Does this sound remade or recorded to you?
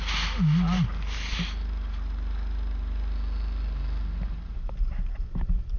recorded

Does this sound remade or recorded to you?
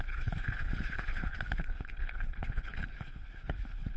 remade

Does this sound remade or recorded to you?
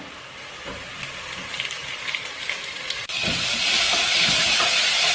remade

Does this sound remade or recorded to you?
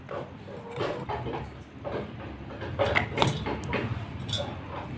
recorded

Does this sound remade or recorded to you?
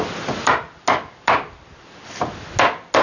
recorded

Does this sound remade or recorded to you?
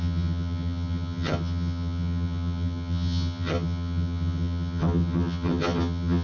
remade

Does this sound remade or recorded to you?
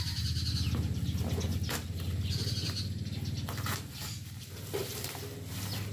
recorded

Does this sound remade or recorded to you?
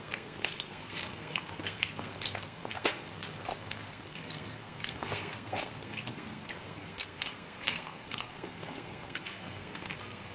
remade